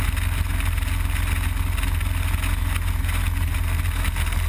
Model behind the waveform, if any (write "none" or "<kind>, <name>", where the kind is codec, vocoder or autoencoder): none